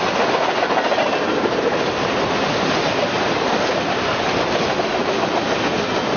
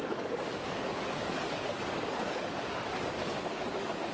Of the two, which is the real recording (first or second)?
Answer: first